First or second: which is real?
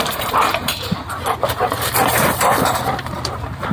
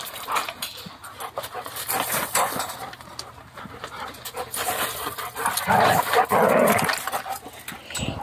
second